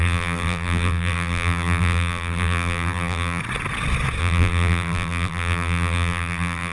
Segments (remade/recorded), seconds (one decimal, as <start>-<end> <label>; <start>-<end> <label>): 0.0-3.4 remade; 3.4-4.2 recorded; 4.2-6.7 remade